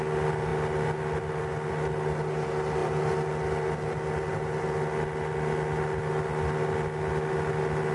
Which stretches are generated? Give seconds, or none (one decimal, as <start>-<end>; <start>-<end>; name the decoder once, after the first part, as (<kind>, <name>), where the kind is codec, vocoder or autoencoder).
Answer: none